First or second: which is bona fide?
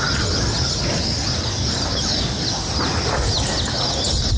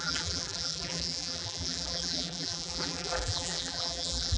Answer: first